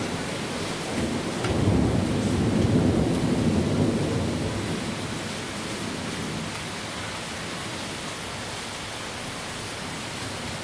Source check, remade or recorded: recorded